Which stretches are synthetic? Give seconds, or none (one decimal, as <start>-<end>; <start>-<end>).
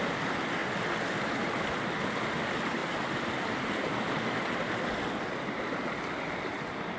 none